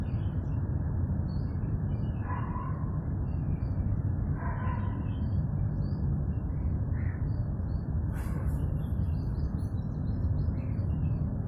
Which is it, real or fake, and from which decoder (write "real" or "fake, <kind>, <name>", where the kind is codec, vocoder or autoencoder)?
fake, vocoder, BigVGAN v2